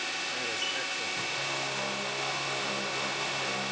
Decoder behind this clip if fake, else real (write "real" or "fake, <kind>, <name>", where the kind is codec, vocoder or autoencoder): real